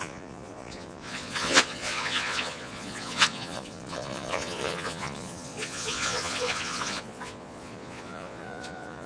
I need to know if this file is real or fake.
fake